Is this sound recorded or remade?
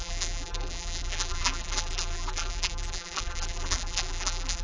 remade